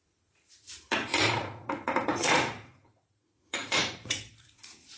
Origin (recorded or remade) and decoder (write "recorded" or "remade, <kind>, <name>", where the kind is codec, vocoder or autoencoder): remade, vocoder, Vocos